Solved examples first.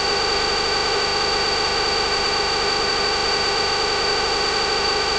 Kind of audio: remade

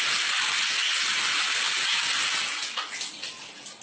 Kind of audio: recorded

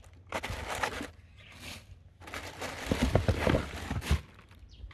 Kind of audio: recorded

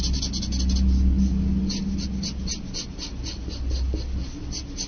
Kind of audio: recorded